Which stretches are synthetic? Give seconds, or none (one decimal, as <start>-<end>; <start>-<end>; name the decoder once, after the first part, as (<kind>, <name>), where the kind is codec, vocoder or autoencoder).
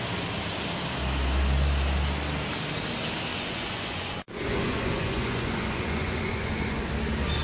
3.3-6.8 (vocoder, Vocos)